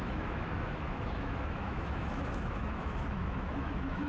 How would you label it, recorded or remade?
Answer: remade